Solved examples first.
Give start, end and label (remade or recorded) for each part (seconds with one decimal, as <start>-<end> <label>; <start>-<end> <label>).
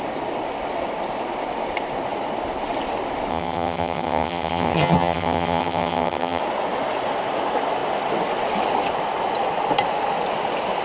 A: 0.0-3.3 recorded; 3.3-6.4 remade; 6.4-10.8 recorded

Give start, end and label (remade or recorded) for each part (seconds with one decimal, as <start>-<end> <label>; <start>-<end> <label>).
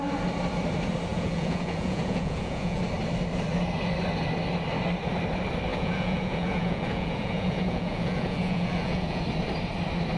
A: 0.0-1.1 recorded; 1.1-2.8 remade; 2.8-5.7 recorded; 5.7-9.2 remade; 9.2-10.2 recorded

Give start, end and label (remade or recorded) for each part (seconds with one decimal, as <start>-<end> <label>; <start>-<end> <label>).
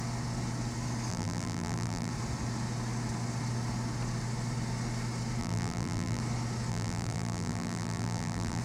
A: 0.0-1.1 recorded; 1.1-2.1 remade; 2.1-5.4 recorded; 5.4-6.2 remade; 6.2-6.7 recorded; 6.7-8.6 remade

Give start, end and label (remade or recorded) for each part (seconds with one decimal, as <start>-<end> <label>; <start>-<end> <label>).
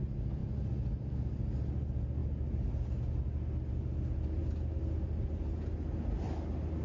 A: 0.0-6.8 recorded